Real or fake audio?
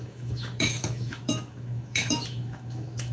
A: fake